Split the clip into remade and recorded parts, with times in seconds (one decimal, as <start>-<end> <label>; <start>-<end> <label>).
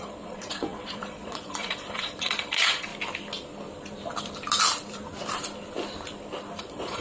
0.0-2.9 remade; 2.9-6.6 recorded; 6.6-7.0 remade